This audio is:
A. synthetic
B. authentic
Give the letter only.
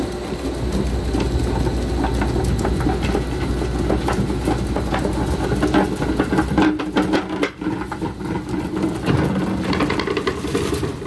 B